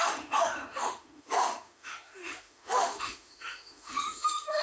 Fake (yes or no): yes